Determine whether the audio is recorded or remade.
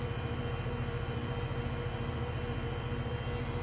remade